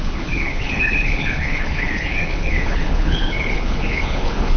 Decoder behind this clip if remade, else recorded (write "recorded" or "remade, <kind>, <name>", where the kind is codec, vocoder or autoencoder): remade, codec, HILCodec